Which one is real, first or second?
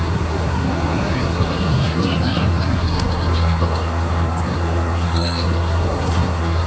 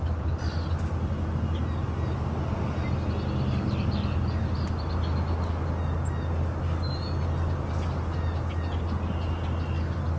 second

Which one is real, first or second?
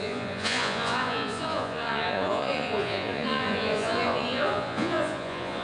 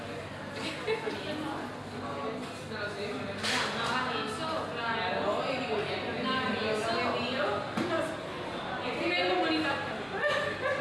second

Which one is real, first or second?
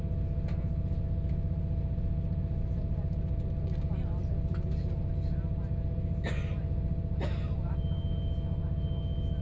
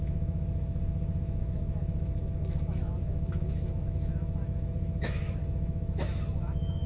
first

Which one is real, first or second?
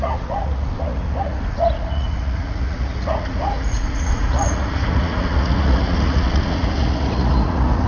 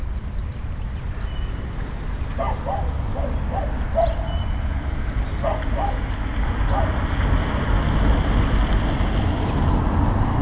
second